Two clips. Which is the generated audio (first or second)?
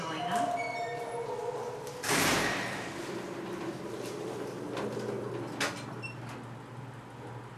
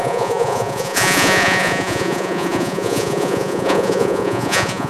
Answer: second